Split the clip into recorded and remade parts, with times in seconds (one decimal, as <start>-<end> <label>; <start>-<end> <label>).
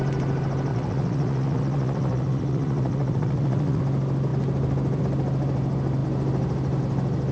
0.0-0.7 recorded; 0.7-3.8 remade; 3.8-7.3 recorded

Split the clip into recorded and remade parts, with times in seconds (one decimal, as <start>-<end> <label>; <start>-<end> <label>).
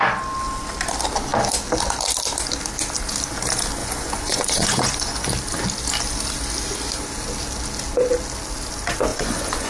0.0-3.8 recorded; 3.8-5.3 remade; 5.3-9.1 recorded; 9.1-9.7 remade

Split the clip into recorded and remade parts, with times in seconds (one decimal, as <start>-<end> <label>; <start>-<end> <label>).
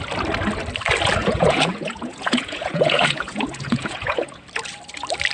0.0-1.2 recorded; 1.2-4.4 remade; 4.4-5.3 recorded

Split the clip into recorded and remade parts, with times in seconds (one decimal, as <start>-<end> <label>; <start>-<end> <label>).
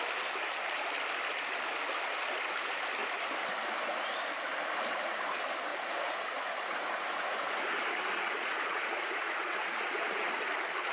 0.0-5.7 recorded; 5.7-10.4 remade; 10.4-10.9 recorded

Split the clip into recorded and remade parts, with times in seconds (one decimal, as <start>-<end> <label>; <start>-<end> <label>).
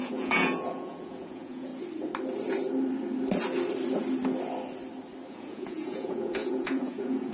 0.0-1.7 remade; 1.7-5.3 recorded; 5.3-7.3 remade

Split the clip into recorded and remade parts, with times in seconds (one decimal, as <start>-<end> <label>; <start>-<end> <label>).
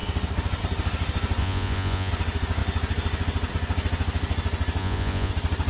0.0-1.4 recorded; 1.4-2.1 remade; 2.1-4.8 recorded; 4.8-5.3 remade; 5.3-5.7 recorded